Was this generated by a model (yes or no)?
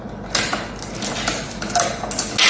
no